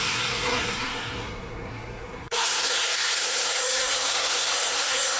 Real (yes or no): no